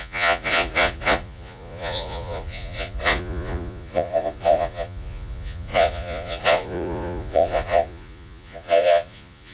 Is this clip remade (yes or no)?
yes